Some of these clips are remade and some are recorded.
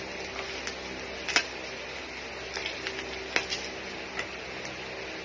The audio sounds recorded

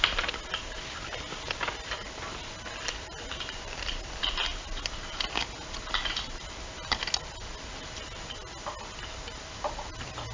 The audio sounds recorded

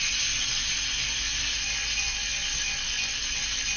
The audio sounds recorded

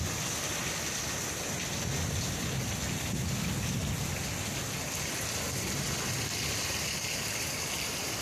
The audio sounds recorded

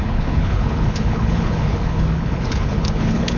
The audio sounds remade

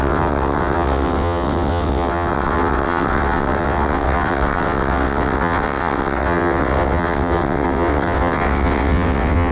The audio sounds remade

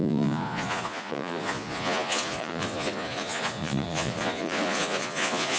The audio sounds remade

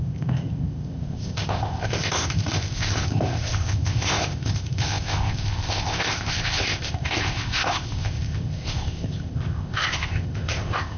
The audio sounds remade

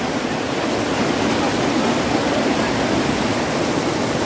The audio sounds recorded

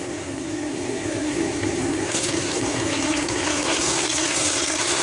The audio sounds remade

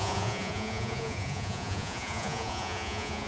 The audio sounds remade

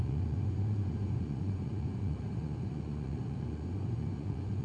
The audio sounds remade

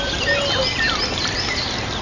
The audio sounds recorded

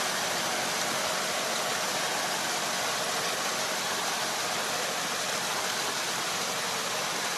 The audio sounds recorded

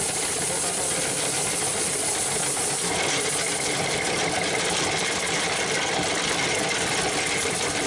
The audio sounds recorded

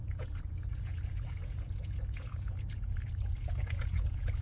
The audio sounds remade